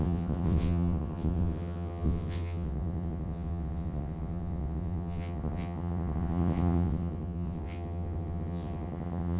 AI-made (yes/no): yes